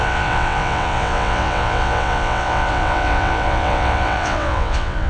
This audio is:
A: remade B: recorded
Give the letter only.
A